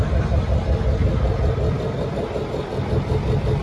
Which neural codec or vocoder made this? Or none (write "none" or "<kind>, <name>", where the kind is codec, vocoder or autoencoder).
none